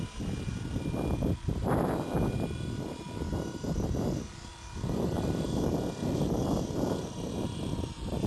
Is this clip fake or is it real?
real